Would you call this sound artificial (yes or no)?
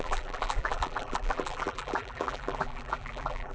yes